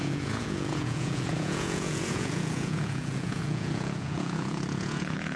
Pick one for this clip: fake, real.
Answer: fake